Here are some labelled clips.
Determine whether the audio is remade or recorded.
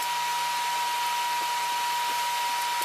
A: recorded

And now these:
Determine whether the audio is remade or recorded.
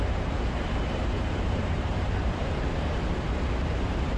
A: remade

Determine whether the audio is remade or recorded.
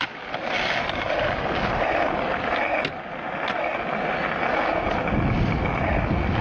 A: recorded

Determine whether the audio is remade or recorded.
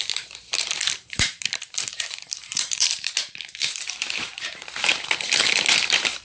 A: remade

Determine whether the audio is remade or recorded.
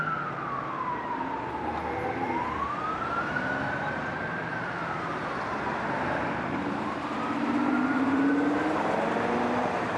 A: remade